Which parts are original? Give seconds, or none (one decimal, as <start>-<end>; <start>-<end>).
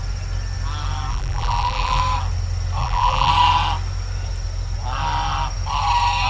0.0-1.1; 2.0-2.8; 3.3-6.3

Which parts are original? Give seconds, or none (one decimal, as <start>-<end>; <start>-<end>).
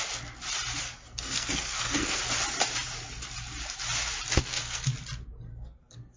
0.0-0.8; 2.2-4.4; 4.9-5.5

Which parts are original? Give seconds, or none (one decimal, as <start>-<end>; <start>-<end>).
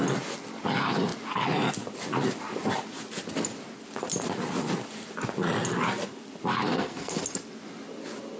0.0-6.7; 7.2-8.4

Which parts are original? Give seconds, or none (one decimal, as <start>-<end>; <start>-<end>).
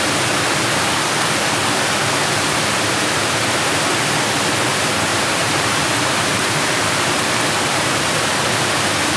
0.0-5.1; 8.0-9.2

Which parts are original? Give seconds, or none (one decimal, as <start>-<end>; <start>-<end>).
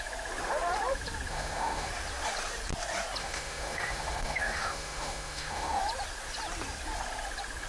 0.0-1.3; 1.9-3.2; 5.8-7.7